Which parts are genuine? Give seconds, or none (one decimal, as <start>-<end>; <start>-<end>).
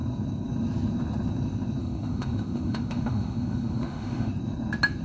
0.0-1.8; 4.3-5.0